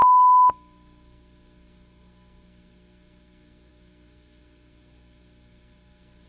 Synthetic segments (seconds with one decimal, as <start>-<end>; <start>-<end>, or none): 0.0-6.3